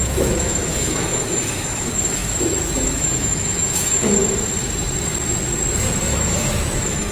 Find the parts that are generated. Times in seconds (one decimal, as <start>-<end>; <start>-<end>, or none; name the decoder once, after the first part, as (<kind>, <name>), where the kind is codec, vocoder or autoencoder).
0.0-4.2 (autoencoder, DAC-VAE); 6.1-7.1